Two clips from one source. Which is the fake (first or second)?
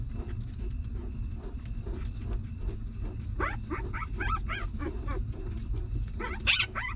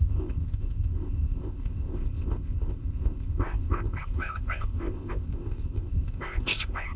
second